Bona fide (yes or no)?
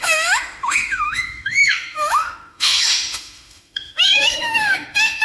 no